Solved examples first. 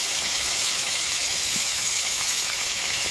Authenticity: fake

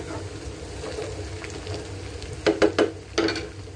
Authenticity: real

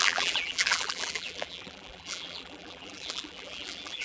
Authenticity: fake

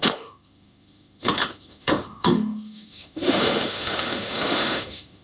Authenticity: fake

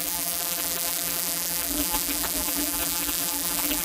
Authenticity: fake